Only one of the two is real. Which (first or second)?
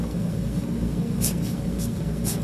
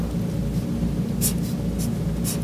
second